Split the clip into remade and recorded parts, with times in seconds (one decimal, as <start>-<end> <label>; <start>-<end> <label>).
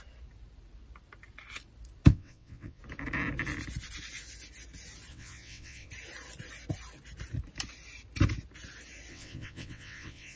0.0-2.1 recorded; 2.1-2.8 remade; 2.8-5.1 recorded; 5.1-5.9 remade; 5.9-9.1 recorded; 9.1-10.4 remade